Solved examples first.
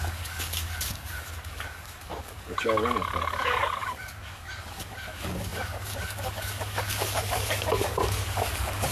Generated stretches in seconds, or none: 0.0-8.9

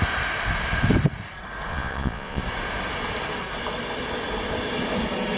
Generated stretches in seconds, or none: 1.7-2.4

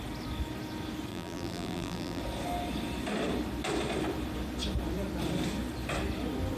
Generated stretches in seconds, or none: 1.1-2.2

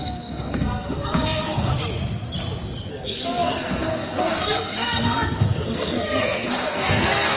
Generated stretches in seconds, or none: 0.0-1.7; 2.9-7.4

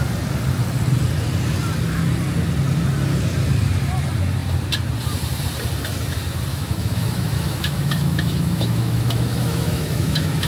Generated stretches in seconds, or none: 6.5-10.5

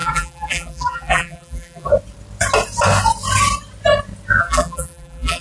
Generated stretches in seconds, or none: 0.0-1.9; 4.4-5.4

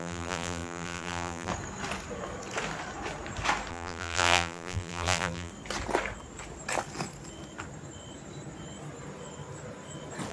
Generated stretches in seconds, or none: 0.0-1.5; 3.7-5.5

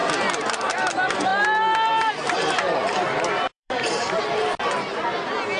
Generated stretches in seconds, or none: 2.8-4.6